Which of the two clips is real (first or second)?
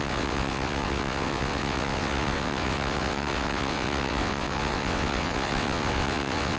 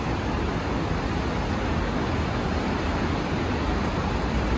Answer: second